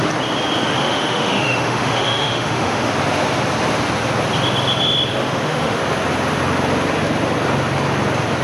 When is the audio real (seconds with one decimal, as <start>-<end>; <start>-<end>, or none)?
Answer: 0.0-0.8; 2.9-5.1; 5.8-8.4